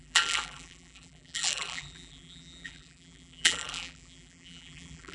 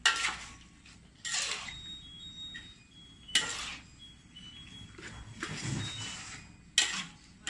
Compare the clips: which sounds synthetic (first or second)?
first